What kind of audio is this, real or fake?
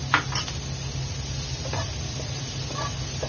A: real